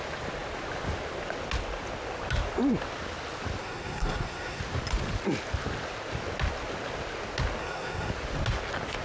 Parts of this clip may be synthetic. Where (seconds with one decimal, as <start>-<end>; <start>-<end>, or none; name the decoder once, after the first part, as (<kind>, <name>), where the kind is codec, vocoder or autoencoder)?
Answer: 3.6-4.6 (codec, SNAC); 7.6-8.1